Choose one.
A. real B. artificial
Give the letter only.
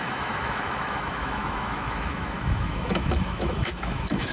B